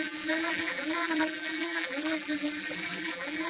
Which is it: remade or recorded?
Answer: remade